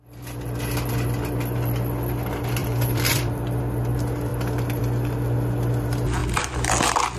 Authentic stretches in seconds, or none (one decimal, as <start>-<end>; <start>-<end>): 0.0-2.6; 3.6-6.2; 6.7-7.2